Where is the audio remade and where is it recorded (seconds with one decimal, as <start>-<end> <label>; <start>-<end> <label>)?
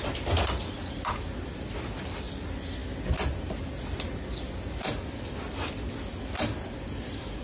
0.0-7.4 recorded